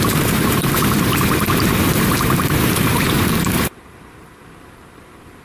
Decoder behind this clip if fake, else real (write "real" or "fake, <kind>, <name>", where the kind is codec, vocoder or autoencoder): fake, vocoder, BigVGAN v2